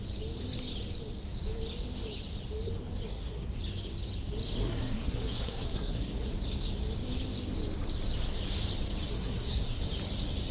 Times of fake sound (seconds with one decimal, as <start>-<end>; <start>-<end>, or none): 3.1-3.6; 4.6-6.3; 9.1-9.8